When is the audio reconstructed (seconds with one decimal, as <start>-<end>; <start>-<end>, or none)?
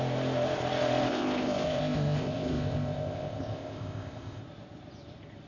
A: 1.1-4.4